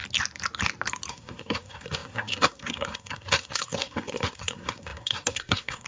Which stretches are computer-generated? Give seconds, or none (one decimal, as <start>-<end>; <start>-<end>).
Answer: 1.1-5.9